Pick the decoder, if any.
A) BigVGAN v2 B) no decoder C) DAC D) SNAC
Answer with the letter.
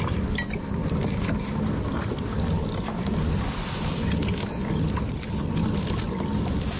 B